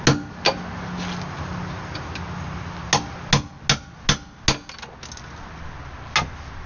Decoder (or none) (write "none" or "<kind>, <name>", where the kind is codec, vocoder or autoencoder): none